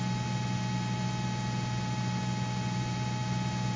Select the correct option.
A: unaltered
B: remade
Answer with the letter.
A